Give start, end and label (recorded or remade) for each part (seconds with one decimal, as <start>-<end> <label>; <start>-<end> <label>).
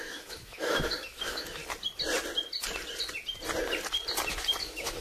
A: 0.0-1.6 remade; 1.6-4.6 recorded; 4.6-5.0 remade